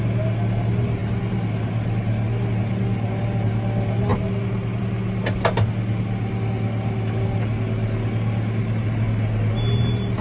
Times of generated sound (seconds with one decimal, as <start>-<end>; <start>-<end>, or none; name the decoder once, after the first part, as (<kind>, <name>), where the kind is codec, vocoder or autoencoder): none